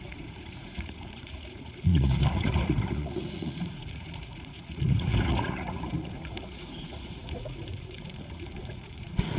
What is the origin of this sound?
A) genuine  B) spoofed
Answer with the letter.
B